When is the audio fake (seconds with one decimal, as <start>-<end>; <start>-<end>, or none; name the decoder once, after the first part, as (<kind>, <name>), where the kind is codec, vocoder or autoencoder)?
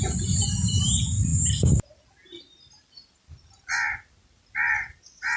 none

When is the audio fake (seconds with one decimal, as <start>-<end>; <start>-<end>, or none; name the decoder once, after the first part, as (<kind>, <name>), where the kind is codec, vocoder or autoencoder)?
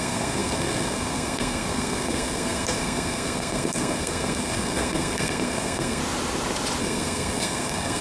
0.0-6.0 (codec, SNAC); 6.8-8.0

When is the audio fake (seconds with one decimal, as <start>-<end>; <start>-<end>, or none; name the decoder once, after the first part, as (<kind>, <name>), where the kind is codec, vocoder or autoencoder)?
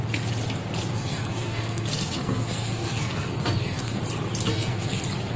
0.9-4.0 (codec, SNAC); 4.5-5.0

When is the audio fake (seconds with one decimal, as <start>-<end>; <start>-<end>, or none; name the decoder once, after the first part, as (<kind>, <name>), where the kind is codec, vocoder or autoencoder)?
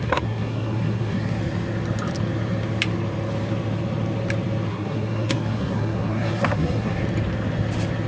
0.0-1.4 (codec, SNAC); 4.7-7.0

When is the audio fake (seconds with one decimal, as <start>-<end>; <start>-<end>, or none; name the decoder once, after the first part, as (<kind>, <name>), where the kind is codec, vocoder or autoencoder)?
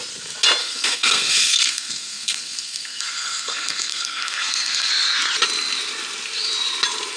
0.6-4.9 (codec, SNAC)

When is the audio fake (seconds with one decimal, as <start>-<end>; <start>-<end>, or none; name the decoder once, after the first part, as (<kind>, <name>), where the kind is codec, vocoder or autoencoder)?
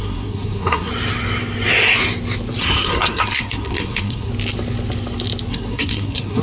0.0-0.9 (codec, SNAC); 2.6-4.3; 5.5-6.4